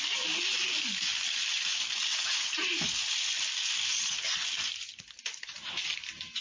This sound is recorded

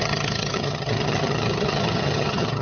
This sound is remade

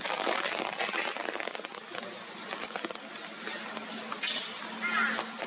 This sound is recorded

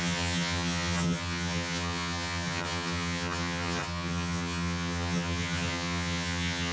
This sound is remade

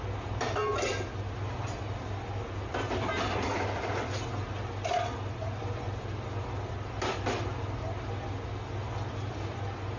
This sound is recorded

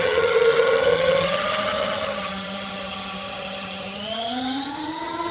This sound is remade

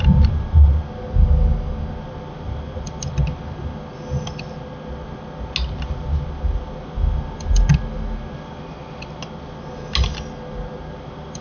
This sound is recorded